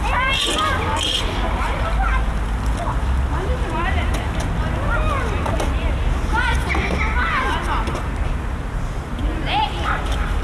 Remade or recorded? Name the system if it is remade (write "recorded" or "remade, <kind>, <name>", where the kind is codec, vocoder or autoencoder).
recorded